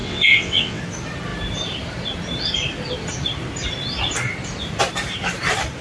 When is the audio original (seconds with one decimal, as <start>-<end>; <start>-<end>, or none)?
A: 0.8-5.8